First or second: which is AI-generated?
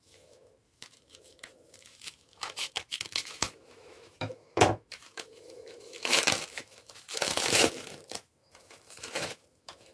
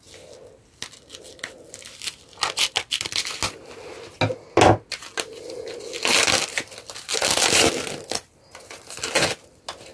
first